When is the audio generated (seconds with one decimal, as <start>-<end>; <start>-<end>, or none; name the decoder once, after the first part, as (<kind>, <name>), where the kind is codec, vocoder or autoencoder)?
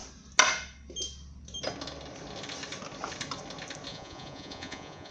3.9-5.1 (vocoder, Vocos)